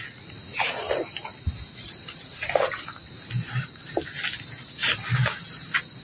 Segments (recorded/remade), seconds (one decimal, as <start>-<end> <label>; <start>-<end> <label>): 0.0-0.5 recorded; 0.5-4.1 remade; 4.1-4.8 recorded; 4.8-5.5 remade; 5.5-6.0 recorded